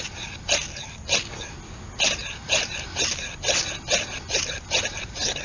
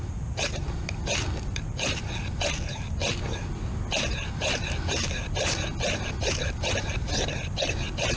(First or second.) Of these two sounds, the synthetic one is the second